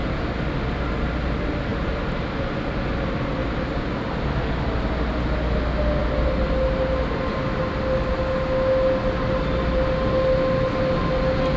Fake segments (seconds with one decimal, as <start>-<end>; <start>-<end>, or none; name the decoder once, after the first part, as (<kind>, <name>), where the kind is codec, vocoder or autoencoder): none